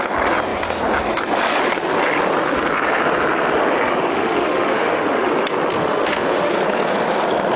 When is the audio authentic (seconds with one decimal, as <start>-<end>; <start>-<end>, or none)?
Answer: 0.0-4.1; 5.3-5.8; 6.5-7.6